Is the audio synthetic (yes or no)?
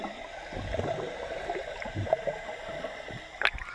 no